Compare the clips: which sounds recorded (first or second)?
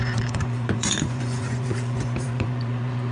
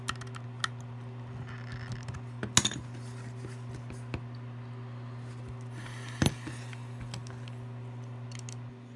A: second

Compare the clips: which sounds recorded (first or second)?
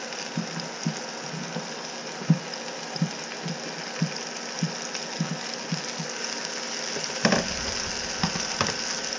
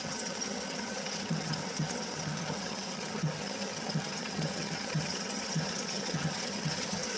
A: first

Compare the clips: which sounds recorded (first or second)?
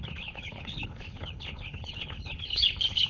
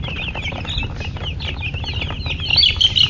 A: second